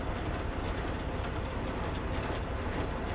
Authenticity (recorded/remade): recorded